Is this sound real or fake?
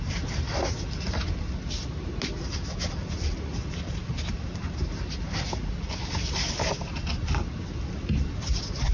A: real